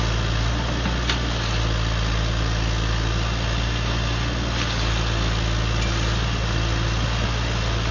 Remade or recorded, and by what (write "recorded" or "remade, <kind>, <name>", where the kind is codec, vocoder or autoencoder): recorded